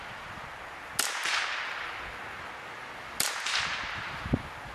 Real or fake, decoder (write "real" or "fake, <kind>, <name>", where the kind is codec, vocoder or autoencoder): real